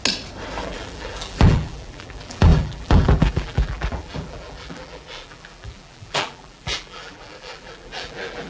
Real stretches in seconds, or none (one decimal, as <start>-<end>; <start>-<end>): 0.0-0.6